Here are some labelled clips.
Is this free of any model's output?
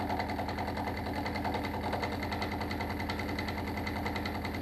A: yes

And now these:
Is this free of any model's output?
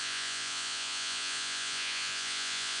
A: no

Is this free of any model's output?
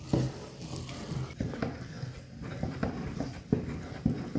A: yes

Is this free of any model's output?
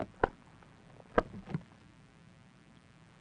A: yes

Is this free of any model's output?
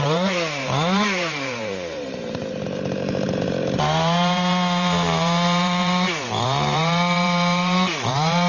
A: no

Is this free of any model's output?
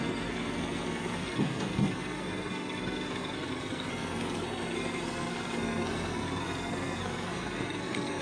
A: no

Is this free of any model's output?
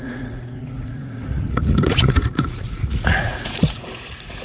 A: no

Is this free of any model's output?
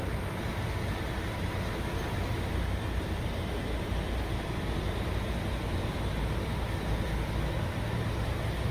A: yes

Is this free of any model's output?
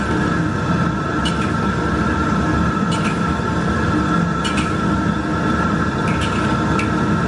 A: yes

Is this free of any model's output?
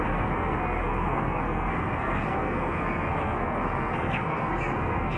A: no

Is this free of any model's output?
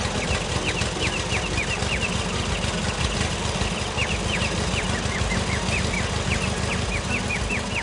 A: yes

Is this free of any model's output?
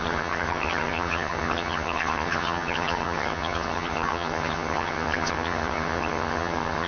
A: no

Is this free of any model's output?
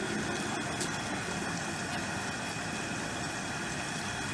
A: yes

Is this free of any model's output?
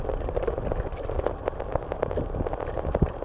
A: no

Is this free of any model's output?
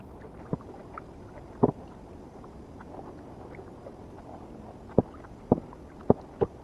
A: yes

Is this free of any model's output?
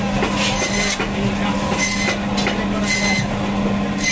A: yes